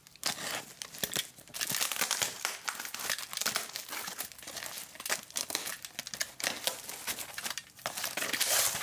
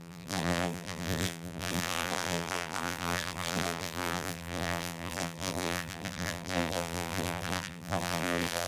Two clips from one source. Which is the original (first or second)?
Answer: first